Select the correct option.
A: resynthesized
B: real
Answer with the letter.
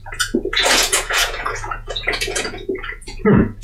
A